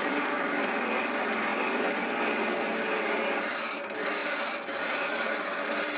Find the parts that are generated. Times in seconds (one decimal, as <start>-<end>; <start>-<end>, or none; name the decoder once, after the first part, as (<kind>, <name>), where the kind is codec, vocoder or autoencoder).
0.0-1.5 (vocoder, BigVGAN v2); 3.5-4.2; 5.3-6.0